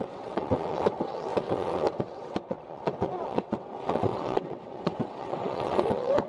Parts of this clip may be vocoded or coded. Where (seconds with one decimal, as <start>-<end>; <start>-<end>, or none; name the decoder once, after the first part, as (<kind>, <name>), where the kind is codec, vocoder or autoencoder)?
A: 0.0-6.3 (vocoder, WaveNeXt)